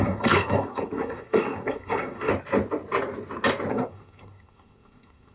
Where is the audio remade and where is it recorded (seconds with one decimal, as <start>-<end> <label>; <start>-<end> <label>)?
0.0-2.3 remade; 2.3-3.7 recorded; 3.7-5.3 remade